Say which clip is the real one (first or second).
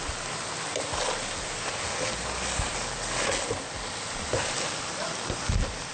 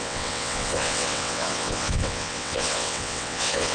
first